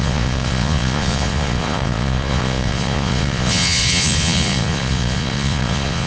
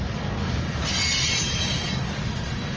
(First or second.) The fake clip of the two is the first